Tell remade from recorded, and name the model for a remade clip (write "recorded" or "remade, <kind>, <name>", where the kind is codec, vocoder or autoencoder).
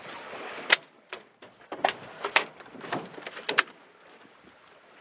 recorded